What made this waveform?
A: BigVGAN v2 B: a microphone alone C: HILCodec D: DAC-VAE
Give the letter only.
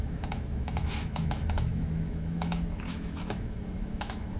D